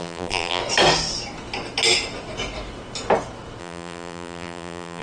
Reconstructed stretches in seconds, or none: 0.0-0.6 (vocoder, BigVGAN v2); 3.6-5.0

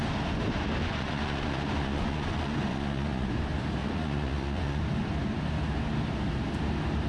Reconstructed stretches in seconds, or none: 0.8-3.3 (vocoder, Vocos); 3.8-4.8

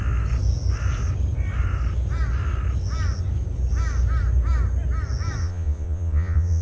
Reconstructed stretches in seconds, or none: 5.4-6.6 (vocoder, Vocos)

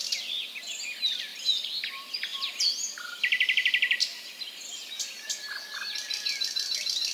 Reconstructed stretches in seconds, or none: none

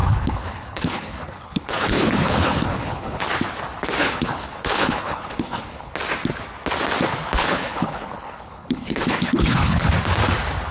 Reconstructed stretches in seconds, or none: 0.0-3.2 (codec, HILCodec); 4.0-5.9; 7.4-9.9